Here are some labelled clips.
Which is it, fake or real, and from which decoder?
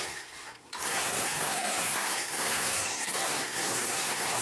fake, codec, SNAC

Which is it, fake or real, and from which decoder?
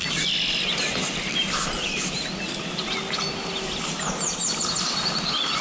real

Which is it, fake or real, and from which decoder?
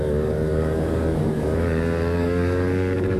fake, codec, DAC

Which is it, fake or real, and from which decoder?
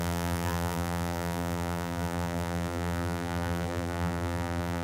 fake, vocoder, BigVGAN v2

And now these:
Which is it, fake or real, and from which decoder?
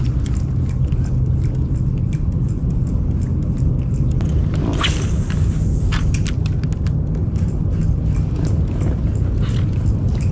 real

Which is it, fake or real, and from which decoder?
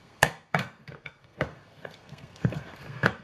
fake, codec, SNAC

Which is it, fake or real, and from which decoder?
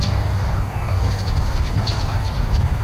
fake, codec, DAC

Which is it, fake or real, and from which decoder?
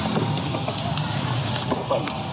real